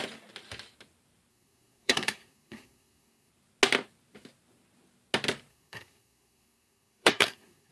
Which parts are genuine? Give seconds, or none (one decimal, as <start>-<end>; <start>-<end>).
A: 0.0-1.3; 3.3-5.5